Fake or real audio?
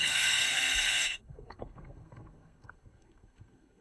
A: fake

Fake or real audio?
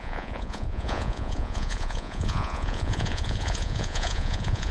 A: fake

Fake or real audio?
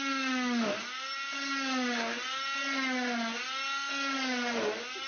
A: real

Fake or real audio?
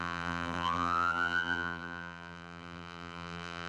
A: fake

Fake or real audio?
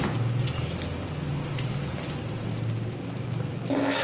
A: real